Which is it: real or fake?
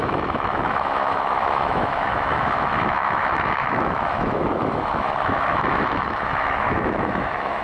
fake